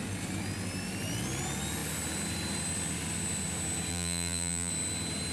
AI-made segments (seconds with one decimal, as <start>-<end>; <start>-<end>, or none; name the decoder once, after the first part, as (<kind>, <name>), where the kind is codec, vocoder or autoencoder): 3.9-4.7 (vocoder, BigVGAN v2)